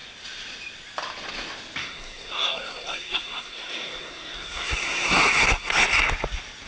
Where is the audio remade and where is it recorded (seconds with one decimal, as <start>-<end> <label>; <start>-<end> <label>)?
0.0-1.8 recorded; 1.8-5.8 remade; 5.8-6.7 recorded